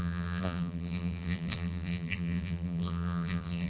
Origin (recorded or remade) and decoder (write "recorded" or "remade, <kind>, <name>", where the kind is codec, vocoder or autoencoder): remade, vocoder, BigVGAN v2